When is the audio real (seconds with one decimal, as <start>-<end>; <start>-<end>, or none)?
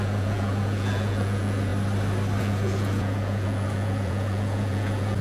1.7-2.4